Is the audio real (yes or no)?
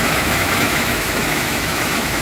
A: no